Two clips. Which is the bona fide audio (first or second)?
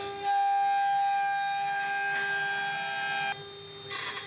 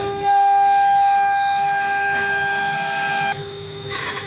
first